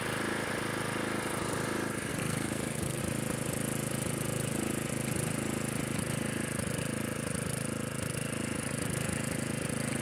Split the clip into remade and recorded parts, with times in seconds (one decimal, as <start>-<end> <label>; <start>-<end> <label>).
0.0-2.1 recorded; 2.1-3.0 remade; 3.0-10.0 recorded